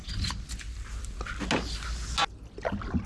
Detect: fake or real real